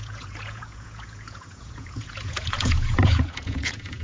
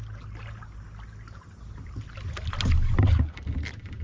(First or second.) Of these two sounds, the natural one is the second